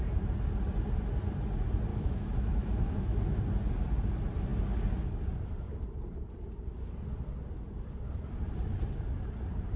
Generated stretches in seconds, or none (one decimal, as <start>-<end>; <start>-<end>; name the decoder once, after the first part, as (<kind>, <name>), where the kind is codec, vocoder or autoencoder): 1.9-3.4 (autoencoder, DAC-VAE)